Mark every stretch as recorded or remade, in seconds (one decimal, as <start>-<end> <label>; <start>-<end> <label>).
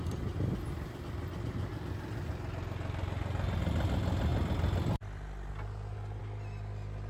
0.0-7.1 recorded